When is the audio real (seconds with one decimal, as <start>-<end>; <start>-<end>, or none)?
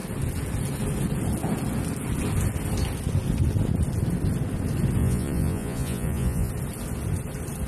0.0-5.0; 6.5-7.7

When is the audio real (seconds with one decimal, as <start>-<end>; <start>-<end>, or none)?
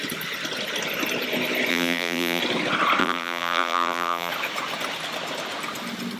0.0-1.7; 2.4-3.0; 4.3-6.2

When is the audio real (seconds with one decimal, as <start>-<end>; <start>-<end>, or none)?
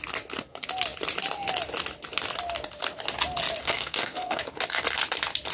0.0-3.6; 4.4-5.5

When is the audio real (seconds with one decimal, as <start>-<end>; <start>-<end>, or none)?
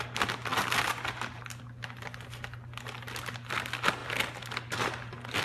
0.0-5.4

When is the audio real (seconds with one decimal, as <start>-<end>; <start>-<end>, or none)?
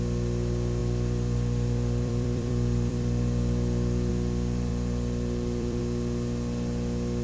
0.0-0.8; 4.1-4.7; 5.8-7.2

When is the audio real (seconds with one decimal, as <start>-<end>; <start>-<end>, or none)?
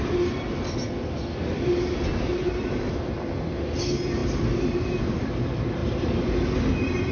0.0-2.1; 3.3-5.8; 6.3-7.1